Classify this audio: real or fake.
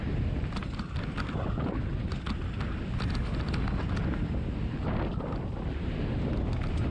real